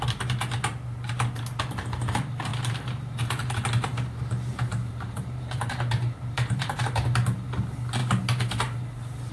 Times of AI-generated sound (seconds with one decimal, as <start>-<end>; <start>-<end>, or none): 2.5-3.2; 4.5-6.8